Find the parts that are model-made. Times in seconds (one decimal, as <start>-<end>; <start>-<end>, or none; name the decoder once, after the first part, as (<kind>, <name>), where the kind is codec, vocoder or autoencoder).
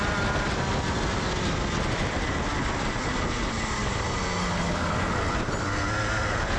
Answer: none